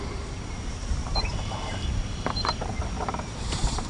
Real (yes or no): no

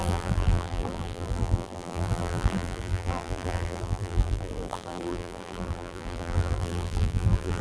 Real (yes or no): no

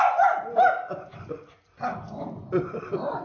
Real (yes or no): no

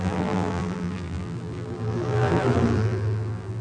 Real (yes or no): no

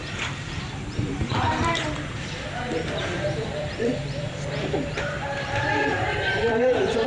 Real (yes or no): no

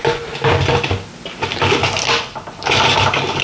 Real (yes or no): yes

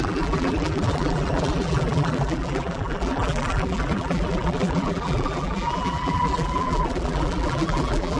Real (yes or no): no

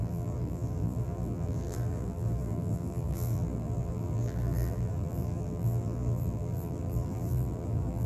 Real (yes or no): no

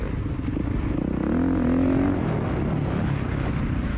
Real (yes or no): yes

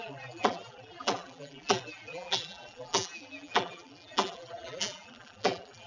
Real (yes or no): no